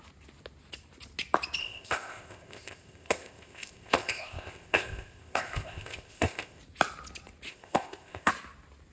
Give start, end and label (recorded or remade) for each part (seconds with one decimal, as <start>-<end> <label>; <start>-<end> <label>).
0.0-1.6 recorded; 1.6-6.6 remade; 6.6-7.5 recorded; 7.5-8.3 remade; 8.3-8.9 recorded

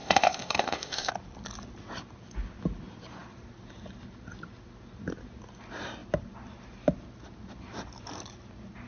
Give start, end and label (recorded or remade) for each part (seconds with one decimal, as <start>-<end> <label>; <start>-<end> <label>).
0.0-1.1 remade; 1.1-8.9 recorded

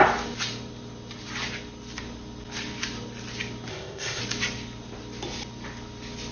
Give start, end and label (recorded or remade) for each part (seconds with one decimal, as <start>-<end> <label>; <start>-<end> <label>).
0.0-3.7 recorded; 3.7-4.2 remade; 4.2-6.3 recorded

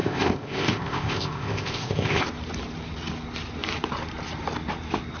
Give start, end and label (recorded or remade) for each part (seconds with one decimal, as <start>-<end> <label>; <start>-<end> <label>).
0.0-2.2 remade; 2.2-5.2 recorded

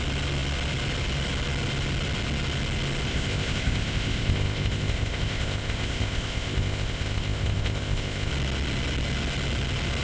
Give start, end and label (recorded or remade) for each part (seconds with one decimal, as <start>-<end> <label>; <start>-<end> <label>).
0.0-3.1 recorded; 3.1-8.3 remade; 8.3-10.0 recorded

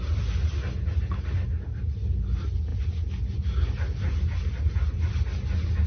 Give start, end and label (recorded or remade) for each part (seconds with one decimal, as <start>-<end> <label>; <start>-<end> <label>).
0.0-5.9 recorded

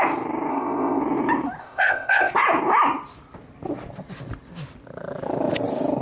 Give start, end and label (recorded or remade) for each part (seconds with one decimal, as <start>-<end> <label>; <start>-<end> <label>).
0.0-0.5 recorded; 0.5-1.0 remade; 1.0-1.6 recorded; 1.6-2.3 remade; 2.3-6.0 recorded

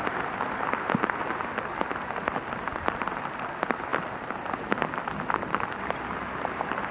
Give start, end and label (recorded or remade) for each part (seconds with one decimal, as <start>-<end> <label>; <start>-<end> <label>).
0.0-6.9 recorded